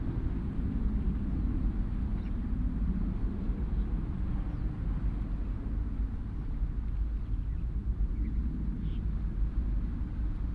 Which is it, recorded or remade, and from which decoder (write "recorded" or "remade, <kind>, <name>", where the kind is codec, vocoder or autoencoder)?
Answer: recorded